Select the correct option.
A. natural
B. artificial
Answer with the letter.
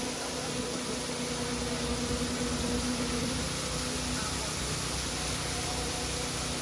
A